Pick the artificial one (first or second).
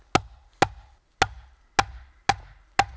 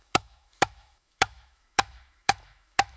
second